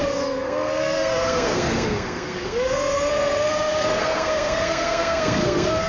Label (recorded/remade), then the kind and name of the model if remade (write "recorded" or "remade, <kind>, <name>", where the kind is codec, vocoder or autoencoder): remade, codec, SNAC